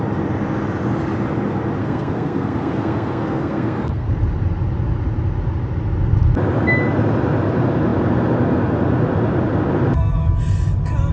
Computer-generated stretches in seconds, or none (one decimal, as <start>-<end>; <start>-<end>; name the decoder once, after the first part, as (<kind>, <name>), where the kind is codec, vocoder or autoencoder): 1.8-4.1 (codec, SNAC)